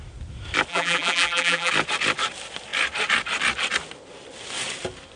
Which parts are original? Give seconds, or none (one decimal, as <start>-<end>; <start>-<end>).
0.0-0.7; 1.7-5.2